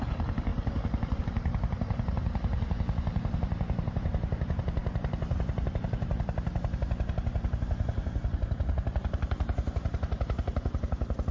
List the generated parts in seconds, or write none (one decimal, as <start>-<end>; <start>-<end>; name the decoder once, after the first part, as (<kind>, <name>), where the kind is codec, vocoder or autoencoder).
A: 0.0-11.3 (vocoder, BigVGAN v2)